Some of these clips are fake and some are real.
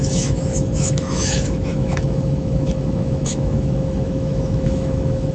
fake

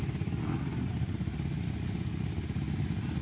real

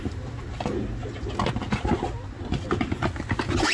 real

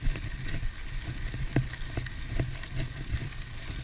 real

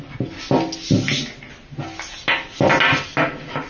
real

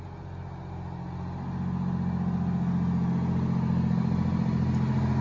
real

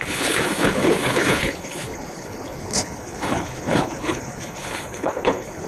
fake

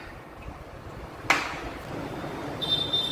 real